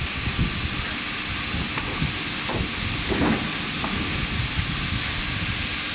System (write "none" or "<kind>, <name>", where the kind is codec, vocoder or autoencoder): none